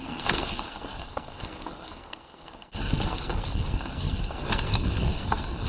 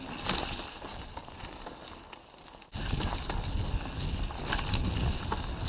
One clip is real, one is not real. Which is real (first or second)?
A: second